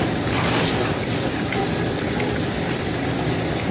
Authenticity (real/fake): fake